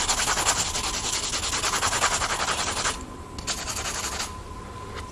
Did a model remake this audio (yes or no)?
no